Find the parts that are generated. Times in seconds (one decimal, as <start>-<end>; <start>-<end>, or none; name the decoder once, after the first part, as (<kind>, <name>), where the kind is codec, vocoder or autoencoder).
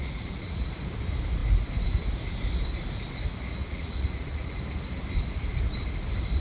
0.0-0.7 (vocoder, Vocos); 3.6-4.6